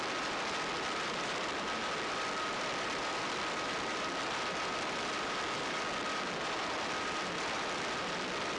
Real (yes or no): no